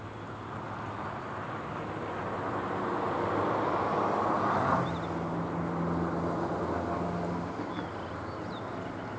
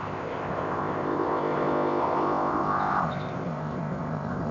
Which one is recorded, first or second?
first